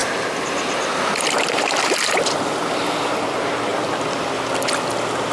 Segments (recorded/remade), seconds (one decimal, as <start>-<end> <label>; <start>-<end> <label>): 0.0-3.2 remade; 3.2-3.7 recorded; 3.7-4.3 remade; 4.3-5.3 recorded

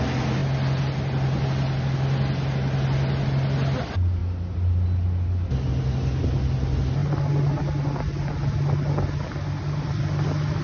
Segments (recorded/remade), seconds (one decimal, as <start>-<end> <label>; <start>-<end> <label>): 0.0-10.6 recorded

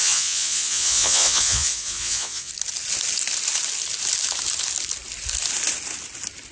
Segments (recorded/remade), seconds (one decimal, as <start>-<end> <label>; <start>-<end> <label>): 0.0-2.5 remade; 2.5-6.5 recorded

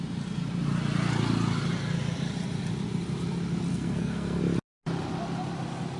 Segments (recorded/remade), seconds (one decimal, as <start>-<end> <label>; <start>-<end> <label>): 0.0-3.7 recorded; 3.7-4.4 remade; 4.4-6.0 recorded

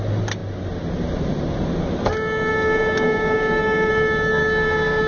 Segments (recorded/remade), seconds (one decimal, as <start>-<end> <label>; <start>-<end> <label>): 0.0-2.5 recorded; 2.5-3.9 remade; 3.9-4.4 recorded; 4.4-5.1 remade

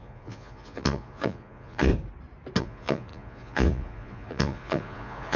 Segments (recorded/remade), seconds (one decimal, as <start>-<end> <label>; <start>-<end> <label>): 0.0-1.9 remade; 1.9-2.6 recorded; 2.6-5.4 remade